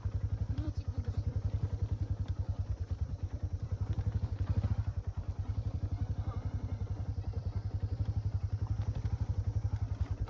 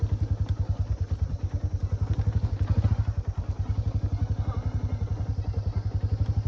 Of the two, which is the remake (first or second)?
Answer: first